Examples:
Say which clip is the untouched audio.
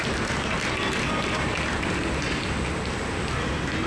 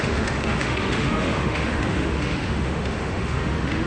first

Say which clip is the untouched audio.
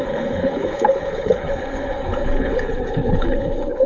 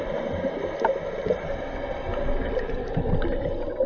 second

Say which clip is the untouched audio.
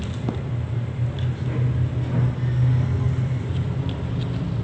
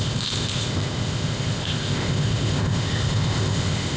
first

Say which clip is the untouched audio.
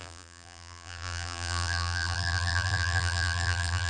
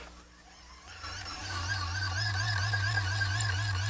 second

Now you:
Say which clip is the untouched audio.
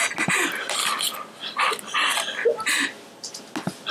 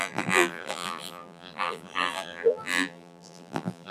first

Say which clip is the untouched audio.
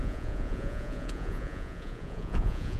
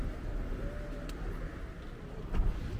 second